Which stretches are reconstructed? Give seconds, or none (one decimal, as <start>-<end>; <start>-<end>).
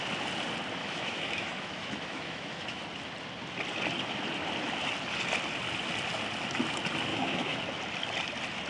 0.8-2.8; 7.1-7.6